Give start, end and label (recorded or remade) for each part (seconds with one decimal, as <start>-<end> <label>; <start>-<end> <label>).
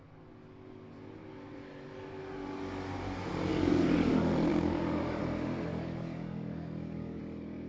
0.0-3.5 recorded; 3.5-4.1 remade; 4.1-4.5 recorded; 4.5-5.2 remade; 5.2-5.7 recorded; 5.7-7.2 remade; 7.2-7.7 recorded